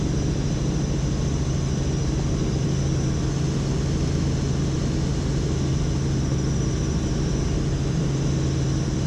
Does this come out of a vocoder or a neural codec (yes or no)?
no